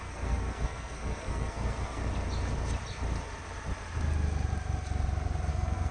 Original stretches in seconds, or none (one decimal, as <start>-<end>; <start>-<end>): 2.0-5.5